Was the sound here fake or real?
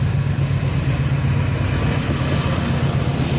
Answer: real